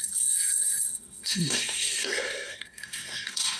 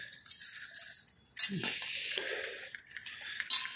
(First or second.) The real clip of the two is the second